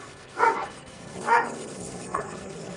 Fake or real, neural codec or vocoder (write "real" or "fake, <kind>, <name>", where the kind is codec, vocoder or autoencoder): fake, codec, SNAC